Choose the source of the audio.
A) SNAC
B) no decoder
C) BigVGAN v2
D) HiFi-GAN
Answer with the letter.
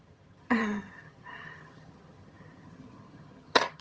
D